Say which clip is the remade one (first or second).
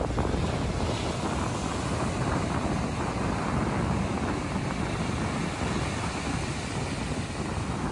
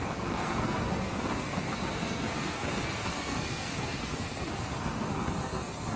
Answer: second